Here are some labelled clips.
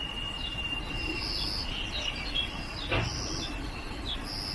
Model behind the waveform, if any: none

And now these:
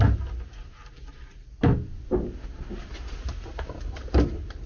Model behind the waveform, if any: none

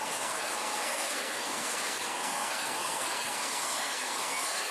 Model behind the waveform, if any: codec, SNAC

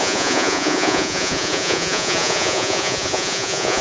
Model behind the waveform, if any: vocoder, Vocos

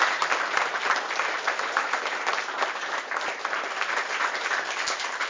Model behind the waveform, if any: vocoder, BigVGAN v2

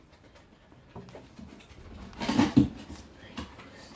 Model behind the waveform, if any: none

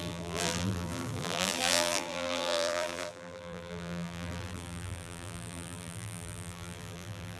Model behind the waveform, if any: vocoder, BigVGAN v2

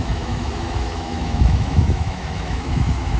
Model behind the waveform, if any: autoencoder, DAC-VAE